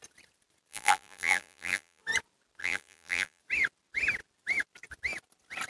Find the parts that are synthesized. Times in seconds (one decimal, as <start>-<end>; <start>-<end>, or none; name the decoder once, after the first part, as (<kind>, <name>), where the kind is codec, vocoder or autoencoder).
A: 0.7-2.0 (vocoder, BigVGAN v2); 2.6-3.4